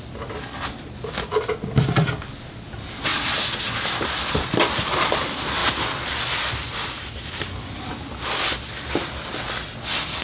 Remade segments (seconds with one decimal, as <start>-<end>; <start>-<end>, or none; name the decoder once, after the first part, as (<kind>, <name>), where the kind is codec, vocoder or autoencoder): none